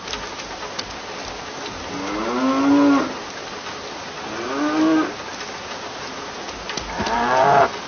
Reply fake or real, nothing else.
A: real